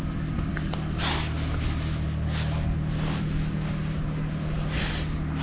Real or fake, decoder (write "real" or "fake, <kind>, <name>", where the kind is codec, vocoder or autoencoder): real